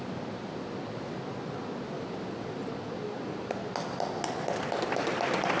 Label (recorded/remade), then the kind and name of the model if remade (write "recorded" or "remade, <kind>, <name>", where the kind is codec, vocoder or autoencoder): recorded